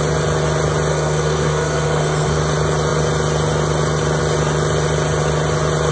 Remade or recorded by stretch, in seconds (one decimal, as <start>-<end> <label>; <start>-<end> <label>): 0.0-0.9 recorded; 0.9-2.4 remade; 2.4-5.9 recorded